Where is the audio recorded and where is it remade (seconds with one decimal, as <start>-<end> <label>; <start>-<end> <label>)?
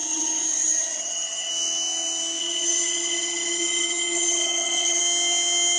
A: 0.0-1.5 remade; 1.5-2.4 recorded; 2.4-5.0 remade; 5.0-5.8 recorded